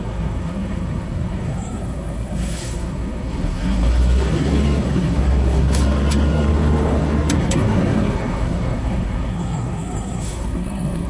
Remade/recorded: remade